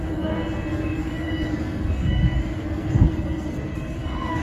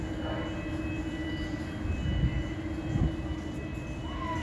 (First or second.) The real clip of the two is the second